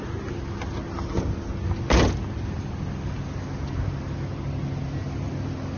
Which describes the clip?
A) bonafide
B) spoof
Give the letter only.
A